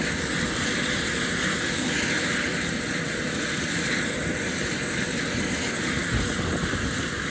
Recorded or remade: recorded